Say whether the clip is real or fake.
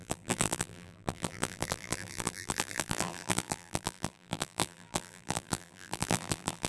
fake